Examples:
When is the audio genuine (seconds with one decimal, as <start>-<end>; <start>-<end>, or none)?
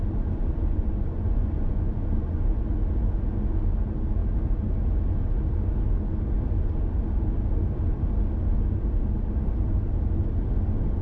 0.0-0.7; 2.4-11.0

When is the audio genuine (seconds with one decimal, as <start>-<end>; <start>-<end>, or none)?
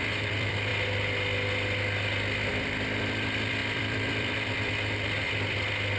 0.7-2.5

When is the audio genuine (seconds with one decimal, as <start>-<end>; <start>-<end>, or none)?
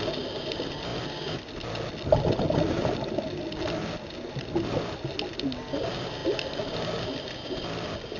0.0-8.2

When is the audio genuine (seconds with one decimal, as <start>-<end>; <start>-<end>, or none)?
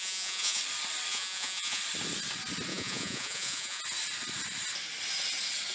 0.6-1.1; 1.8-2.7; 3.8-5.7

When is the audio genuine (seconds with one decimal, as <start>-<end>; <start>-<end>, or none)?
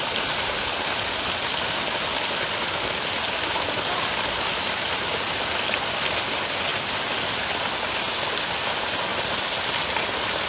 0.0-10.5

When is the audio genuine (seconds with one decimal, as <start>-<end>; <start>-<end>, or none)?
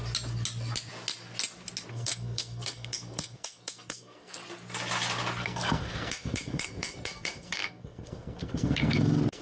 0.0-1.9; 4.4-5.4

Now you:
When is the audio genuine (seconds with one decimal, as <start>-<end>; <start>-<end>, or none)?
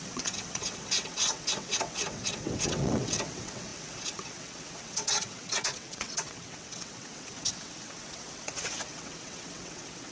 none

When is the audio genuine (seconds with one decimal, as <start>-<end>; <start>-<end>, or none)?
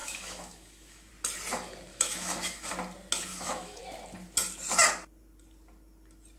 1.1-1.9; 2.7-3.3; 3.8-6.4